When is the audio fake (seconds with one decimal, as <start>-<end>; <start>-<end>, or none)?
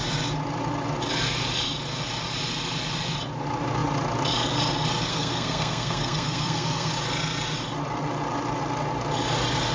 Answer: 5.1-6.9